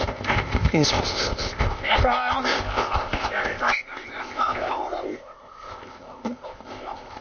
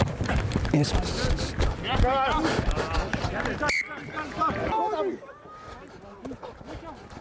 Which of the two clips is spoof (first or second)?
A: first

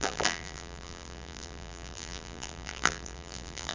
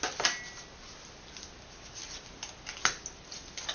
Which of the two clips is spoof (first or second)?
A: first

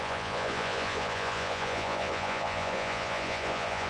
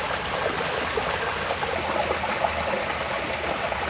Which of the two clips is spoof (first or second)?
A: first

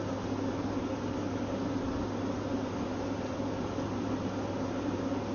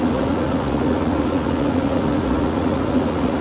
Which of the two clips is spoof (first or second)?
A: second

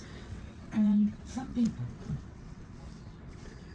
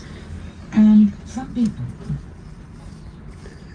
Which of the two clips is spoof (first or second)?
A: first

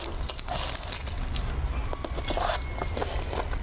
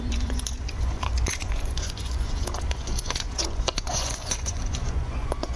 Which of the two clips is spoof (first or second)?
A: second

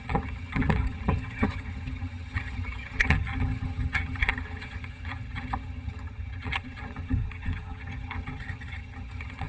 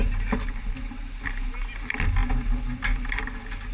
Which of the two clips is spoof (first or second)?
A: first